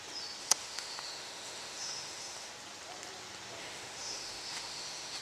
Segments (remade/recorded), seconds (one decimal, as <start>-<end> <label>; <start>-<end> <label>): 0.0-0.4 recorded; 0.4-2.5 remade; 2.5-3.6 recorded; 3.6-5.2 remade

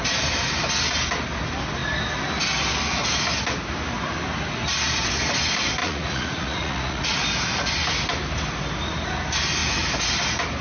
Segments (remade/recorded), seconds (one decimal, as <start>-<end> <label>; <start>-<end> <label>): 0.0-5.8 recorded; 5.8-7.2 remade; 7.2-10.6 recorded

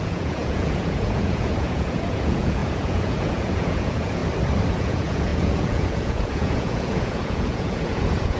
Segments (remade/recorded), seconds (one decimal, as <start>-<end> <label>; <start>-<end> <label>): 0.0-4.2 remade; 4.2-4.7 recorded; 4.7-8.4 remade

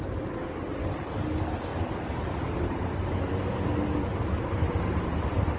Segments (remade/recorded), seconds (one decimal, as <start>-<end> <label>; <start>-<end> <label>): 0.0-5.6 recorded

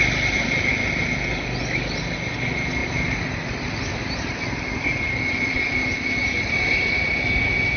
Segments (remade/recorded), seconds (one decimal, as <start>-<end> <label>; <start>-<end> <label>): 0.0-7.8 recorded

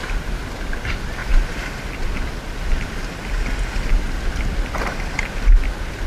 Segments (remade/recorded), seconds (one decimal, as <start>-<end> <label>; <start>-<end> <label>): 0.0-6.1 recorded

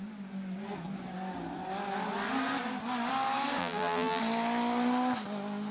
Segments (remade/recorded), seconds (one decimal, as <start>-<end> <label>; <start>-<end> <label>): 0.0-3.6 recorded; 3.6-4.2 remade; 4.2-5.7 recorded

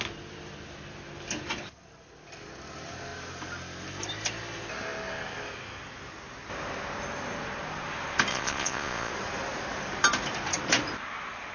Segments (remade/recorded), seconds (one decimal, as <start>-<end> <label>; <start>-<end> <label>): 0.0-8.3 recorded; 8.3-9.1 remade; 9.1-11.5 recorded